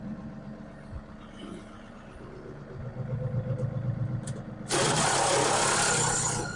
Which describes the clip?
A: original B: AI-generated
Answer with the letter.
A